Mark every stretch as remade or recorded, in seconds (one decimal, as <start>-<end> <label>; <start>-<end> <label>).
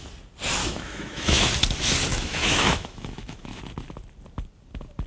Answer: 0.0-0.6 recorded; 0.6-1.5 remade; 1.5-2.1 recorded; 2.1-3.6 remade; 3.6-5.1 recorded